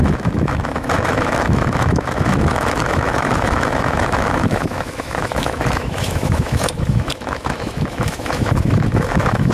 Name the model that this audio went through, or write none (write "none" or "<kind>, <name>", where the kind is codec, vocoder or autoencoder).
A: autoencoder, DAC-VAE